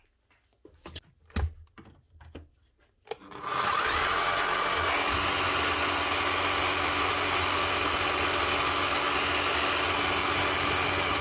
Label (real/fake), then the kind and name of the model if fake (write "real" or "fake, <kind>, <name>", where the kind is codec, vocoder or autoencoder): real